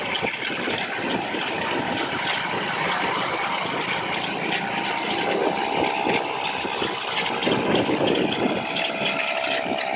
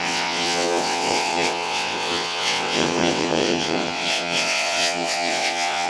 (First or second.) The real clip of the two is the first